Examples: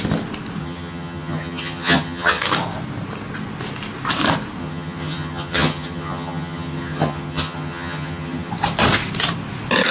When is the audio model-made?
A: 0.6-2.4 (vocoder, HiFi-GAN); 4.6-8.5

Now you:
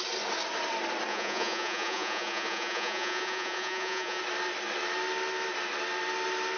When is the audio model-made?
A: 1.1-4.2 (vocoder, Vocos)